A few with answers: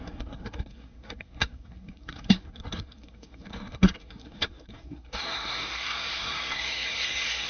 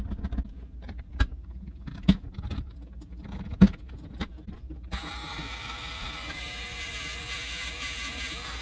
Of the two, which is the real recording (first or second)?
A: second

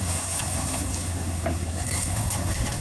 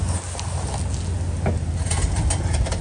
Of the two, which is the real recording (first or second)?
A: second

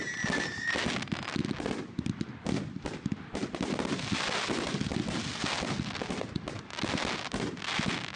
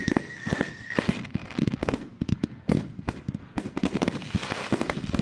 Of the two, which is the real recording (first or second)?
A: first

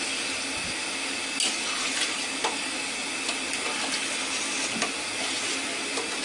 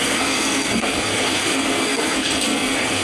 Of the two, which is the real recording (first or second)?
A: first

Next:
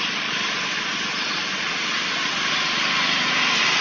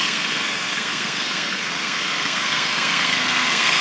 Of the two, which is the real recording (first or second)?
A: first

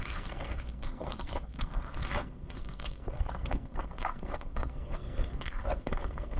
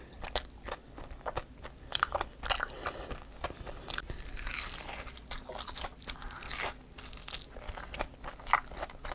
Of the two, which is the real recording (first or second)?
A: second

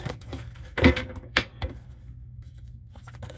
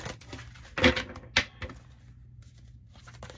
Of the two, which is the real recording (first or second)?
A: second